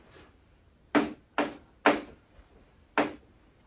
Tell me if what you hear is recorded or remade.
recorded